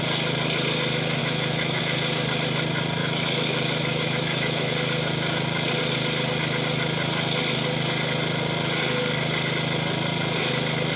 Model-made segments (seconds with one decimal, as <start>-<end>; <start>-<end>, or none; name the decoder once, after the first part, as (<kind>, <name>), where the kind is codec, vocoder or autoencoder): 1.2-1.8 (autoencoder, DAC-VAE); 3.0-4.7